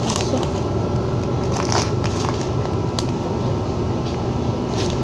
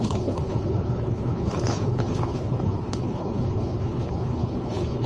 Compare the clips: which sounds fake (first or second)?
second